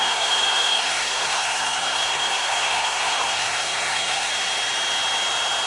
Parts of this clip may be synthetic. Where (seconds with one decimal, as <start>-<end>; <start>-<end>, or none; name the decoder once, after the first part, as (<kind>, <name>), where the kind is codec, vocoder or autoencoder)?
0.0-4.3 (codec, SNAC)